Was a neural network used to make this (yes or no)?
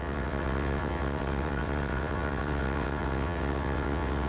yes